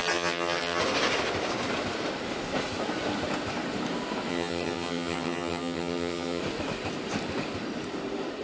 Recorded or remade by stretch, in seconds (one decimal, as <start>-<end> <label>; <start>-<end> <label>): 0.0-0.8 remade; 0.8-4.3 recorded; 4.3-6.4 remade; 6.4-8.4 recorded